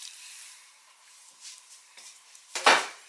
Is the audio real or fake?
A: fake